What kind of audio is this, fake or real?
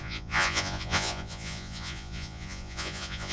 fake